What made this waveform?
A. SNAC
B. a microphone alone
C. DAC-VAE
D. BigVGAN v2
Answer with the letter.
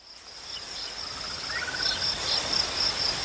B